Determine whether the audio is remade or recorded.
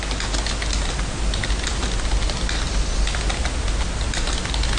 recorded